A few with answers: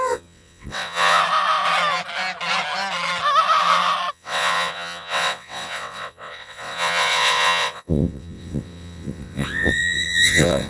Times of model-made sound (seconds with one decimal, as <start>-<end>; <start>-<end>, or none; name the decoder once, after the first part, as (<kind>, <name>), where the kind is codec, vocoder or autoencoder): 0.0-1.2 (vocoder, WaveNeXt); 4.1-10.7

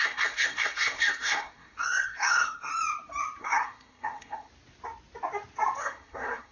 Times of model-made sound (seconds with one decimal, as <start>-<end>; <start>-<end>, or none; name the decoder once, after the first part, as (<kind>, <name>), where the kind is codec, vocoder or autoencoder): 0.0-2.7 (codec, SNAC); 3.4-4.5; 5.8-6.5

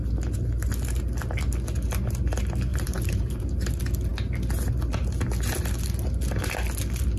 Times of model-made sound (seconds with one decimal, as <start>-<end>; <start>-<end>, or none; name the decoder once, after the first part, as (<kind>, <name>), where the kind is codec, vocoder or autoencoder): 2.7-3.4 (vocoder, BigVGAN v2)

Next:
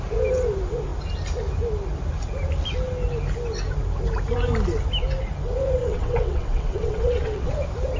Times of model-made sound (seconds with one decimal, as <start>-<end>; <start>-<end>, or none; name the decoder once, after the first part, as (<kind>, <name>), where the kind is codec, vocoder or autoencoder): 5.8-7.5 (vocoder, WaveNeXt)